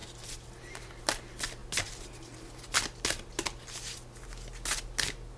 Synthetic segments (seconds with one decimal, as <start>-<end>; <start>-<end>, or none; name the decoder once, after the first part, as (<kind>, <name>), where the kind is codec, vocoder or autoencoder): none